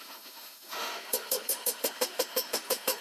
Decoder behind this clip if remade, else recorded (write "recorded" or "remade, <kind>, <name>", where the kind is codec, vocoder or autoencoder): remade, autoencoder, DAC-VAE